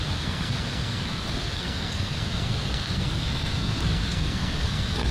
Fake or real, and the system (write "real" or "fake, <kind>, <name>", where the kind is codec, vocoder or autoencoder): fake, codec, SNAC